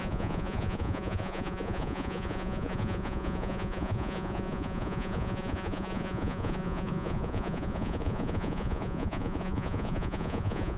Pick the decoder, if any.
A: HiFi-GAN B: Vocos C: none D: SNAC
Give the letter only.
B